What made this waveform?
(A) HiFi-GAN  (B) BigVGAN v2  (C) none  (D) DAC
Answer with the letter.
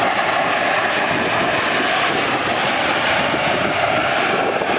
C